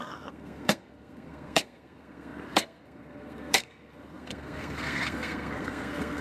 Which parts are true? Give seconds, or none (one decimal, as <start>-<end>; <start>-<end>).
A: none